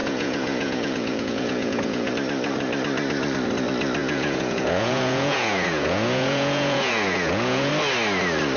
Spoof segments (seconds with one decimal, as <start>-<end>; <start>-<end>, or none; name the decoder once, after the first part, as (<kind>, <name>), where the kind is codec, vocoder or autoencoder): 0.0-2.1 (vocoder, Vocos); 4.0-7.7